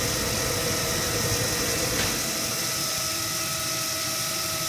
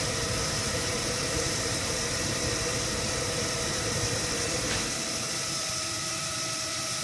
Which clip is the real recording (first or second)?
first